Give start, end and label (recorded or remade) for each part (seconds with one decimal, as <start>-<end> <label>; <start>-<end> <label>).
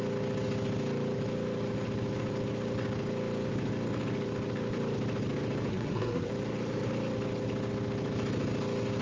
0.0-5.7 recorded; 5.7-6.3 remade; 6.3-9.0 recorded